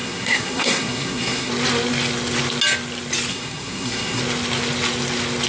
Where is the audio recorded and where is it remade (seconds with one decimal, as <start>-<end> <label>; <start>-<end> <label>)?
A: 0.0-1.5 remade; 1.5-3.3 recorded; 3.3-4.2 remade; 4.2-5.5 recorded